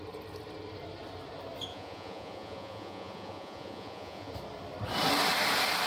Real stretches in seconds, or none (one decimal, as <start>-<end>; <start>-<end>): 0.0-1.7; 4.3-5.9